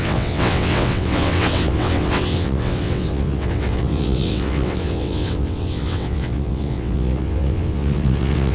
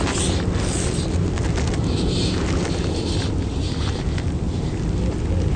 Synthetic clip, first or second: first